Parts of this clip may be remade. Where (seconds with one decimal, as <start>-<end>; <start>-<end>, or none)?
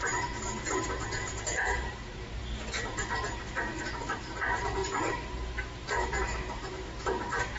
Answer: 0.0-2.4; 3.8-7.6